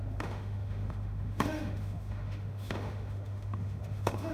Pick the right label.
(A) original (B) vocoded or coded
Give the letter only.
B